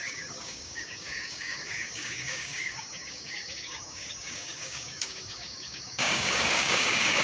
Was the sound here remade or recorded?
remade